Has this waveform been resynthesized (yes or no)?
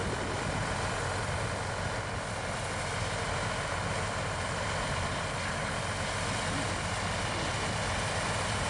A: no